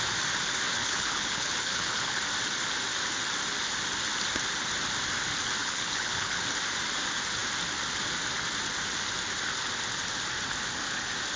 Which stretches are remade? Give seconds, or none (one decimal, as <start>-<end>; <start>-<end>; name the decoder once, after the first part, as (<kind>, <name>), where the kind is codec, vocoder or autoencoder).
0.7-2.2 (codec, HILCodec); 5.6-6.4